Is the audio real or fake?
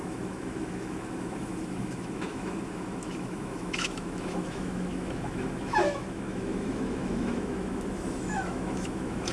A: fake